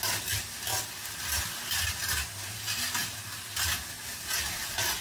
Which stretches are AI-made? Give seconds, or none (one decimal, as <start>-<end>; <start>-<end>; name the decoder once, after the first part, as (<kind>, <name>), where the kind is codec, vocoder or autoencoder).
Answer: 0.7-1.4 (vocoder, BigVGAN v2)